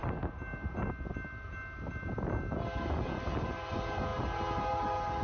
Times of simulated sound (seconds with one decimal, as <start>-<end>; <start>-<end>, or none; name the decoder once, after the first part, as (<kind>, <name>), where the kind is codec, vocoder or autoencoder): none